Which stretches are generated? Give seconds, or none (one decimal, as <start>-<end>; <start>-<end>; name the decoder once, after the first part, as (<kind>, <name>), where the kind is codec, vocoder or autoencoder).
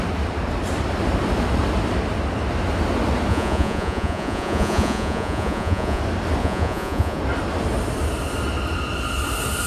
3.3-6.0 (vocoder, Vocos); 6.4-7.2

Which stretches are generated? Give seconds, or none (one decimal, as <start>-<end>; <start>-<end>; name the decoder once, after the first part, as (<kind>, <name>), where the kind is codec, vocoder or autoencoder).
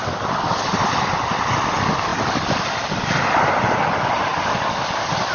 none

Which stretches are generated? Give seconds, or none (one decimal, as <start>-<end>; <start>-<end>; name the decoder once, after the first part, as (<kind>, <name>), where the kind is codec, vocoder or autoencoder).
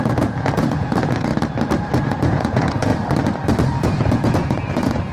0.0-1.3 (vocoder, Vocos); 2.0-2.9; 3.8-5.1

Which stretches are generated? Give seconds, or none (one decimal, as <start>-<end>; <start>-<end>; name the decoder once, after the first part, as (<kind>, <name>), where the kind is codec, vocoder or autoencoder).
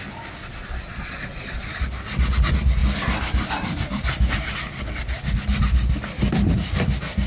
0.4-1.7 (vocoder, Vocos)